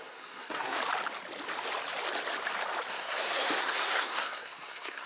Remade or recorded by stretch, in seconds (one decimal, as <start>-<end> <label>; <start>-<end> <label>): 0.0-0.8 remade; 0.8-2.9 recorded; 2.9-5.1 remade